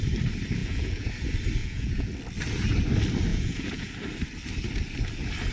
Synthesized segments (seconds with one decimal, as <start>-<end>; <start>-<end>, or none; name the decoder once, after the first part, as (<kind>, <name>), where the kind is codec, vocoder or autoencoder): 0.6-1.1 (vocoder, Vocos); 1.6-2.1; 3.3-3.9